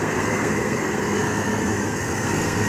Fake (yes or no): yes